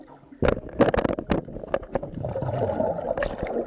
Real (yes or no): yes